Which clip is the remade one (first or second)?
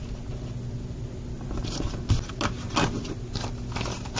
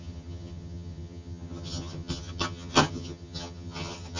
second